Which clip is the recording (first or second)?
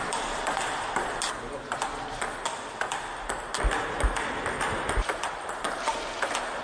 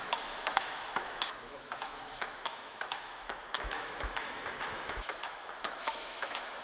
first